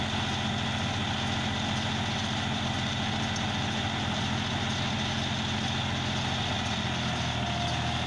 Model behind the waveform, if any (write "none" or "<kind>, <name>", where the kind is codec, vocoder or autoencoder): none